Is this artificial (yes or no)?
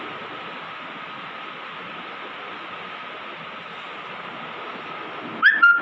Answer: no